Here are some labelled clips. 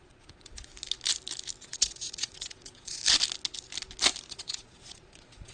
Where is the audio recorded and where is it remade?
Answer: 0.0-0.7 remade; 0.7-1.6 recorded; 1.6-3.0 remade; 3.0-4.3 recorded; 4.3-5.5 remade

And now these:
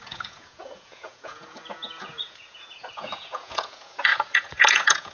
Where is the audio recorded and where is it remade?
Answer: 0.0-5.1 remade

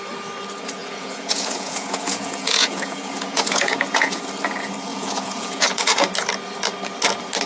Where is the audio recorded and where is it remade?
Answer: 0.0-0.8 recorded; 0.8-4.2 remade; 4.2-4.9 recorded; 4.9-6.1 remade; 6.1-7.5 recorded